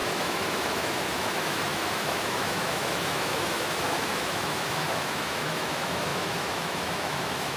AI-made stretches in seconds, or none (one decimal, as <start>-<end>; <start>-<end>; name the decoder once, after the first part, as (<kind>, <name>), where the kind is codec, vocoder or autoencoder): 0.0-7.6 (autoencoder, DAC-VAE)

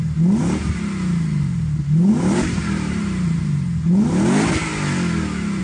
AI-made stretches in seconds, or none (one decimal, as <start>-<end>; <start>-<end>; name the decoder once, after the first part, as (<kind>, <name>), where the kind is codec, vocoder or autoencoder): 2.1-3.4 (vocoder, BigVGAN v2)

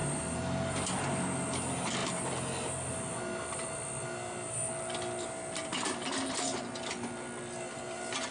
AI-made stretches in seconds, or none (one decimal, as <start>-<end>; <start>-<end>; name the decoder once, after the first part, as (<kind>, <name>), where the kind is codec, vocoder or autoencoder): none

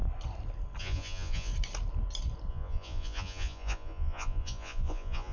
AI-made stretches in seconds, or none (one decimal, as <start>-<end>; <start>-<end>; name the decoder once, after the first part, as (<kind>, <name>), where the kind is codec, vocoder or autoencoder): 0.8-1.5 (vocoder, Vocos); 2.5-5.3

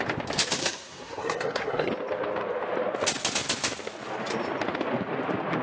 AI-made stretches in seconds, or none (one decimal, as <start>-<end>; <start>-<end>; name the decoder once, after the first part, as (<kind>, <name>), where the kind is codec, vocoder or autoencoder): 0.6-1.9 (codec, SNAC)

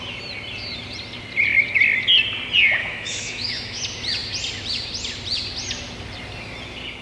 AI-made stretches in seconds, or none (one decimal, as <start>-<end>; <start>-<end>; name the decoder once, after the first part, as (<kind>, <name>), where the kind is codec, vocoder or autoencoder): 2.8-3.8 (autoencoder, DAC-VAE)